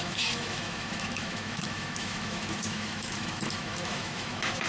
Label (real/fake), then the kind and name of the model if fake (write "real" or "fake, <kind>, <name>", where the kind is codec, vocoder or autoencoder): fake, autoencoder, DAC-VAE